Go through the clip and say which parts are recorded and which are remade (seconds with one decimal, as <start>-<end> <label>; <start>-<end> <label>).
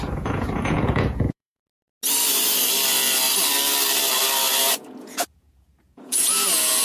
0.0-1.6 remade; 1.6-4.6 recorded; 4.6-6.8 remade